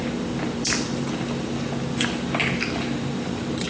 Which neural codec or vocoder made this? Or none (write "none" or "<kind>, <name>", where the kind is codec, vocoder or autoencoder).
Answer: none